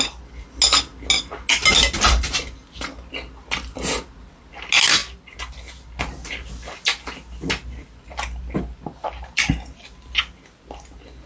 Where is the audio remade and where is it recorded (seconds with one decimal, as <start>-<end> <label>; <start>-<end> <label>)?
0.0-11.3 recorded